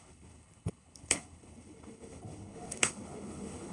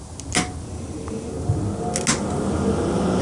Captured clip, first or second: second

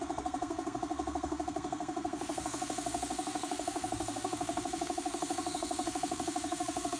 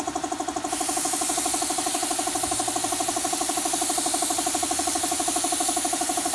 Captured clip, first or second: second